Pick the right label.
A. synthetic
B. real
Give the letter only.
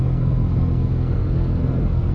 A